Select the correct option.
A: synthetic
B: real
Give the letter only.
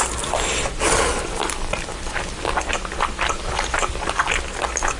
B